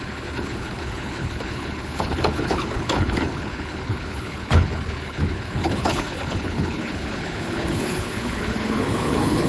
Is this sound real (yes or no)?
no